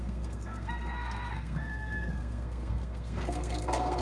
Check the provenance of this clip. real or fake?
fake